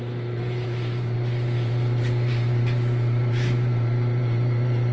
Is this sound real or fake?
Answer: fake